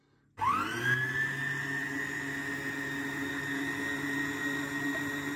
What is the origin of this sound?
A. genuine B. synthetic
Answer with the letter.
A